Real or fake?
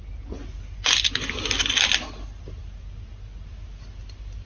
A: real